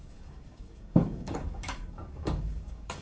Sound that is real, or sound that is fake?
fake